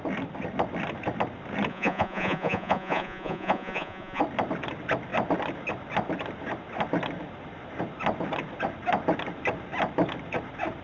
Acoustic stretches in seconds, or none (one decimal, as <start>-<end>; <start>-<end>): 0.0-1.7; 4.2-10.8